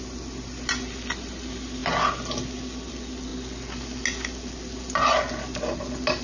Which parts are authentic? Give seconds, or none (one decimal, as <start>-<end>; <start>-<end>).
0.0-6.2